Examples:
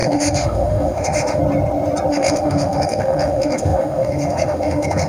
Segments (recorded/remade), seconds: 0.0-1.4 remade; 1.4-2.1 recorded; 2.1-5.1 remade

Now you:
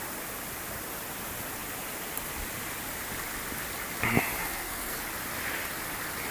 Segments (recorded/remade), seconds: 0.0-4.4 recorded; 4.4-5.0 remade; 5.0-6.3 recorded

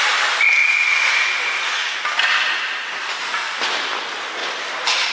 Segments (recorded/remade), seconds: 0.0-4.4 recorded; 4.4-5.1 remade

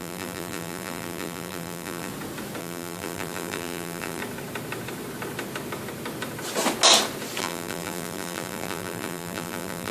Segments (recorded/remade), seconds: 0.0-2.1 remade; 2.1-2.6 recorded; 2.6-4.2 remade; 4.2-7.4 recorded; 7.4-9.9 remade